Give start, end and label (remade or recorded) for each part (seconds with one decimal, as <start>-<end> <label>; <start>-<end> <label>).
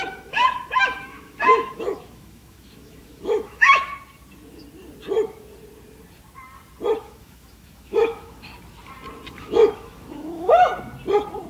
0.0-3.9 remade; 3.9-7.0 recorded; 7.0-8.5 remade; 8.5-9.3 recorded; 9.3-10.7 remade; 10.7-11.5 recorded